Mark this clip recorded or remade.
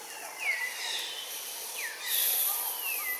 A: recorded